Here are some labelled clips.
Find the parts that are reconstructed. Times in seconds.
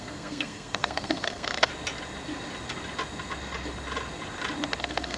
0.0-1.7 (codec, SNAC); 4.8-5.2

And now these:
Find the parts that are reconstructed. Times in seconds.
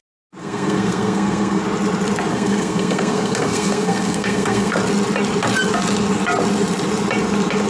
0.4-1.6 (codec, SNAC); 2.3-4.7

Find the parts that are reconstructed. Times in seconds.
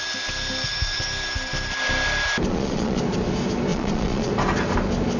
2.5-3.0 (vocoder, Vocos); 3.7-4.3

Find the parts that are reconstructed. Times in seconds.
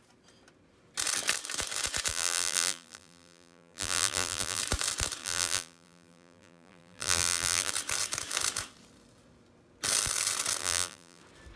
2.1-4.6 (vocoder, BigVGAN v2); 5.2-7.7; 10.6-11.2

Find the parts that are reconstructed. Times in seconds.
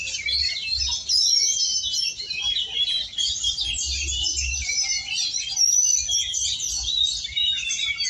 1.7-4.5 (vocoder, BigVGAN v2)